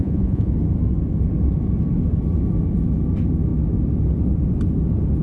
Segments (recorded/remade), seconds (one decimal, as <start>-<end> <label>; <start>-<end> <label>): 0.0-0.5 remade; 0.5-5.2 recorded